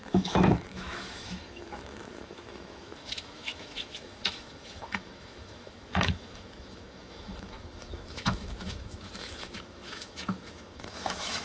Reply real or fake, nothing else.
fake